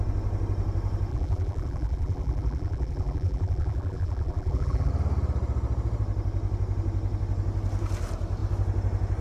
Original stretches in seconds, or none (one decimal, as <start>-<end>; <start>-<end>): 0.0-1.1; 4.9-9.2